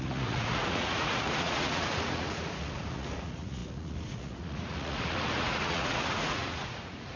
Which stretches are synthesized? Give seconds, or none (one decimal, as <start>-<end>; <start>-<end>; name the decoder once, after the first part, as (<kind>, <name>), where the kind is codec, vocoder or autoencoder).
0.0-7.2 (vocoder, Vocos)